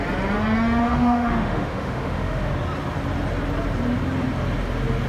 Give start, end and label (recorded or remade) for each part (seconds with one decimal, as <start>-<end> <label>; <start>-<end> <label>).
0.0-0.8 recorded; 0.8-2.5 remade; 2.5-5.1 recorded